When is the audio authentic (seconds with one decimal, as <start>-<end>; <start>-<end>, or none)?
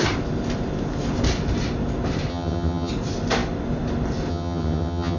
0.0-2.3; 2.9-4.3